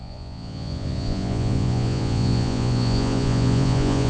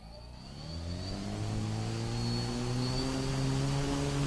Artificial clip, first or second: first